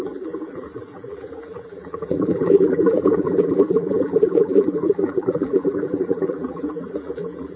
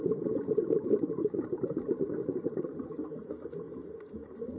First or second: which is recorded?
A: second